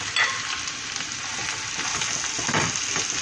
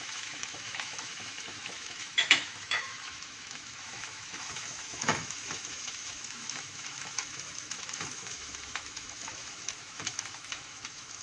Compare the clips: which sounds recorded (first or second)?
first